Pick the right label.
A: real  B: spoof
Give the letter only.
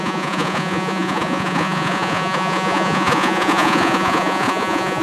B